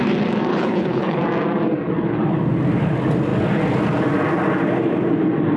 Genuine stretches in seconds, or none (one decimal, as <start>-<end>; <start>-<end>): 0.0-0.5; 1.2-5.6